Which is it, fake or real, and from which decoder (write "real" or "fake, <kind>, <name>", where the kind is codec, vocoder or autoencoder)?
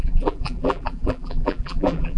fake, vocoder, BigVGAN v2